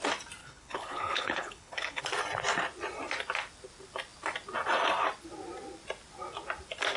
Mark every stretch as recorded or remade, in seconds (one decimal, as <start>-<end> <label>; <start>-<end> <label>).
0.0-0.4 recorded; 0.4-2.0 remade; 2.0-7.0 recorded